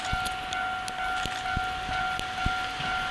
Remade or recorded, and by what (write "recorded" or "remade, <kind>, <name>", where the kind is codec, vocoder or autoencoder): recorded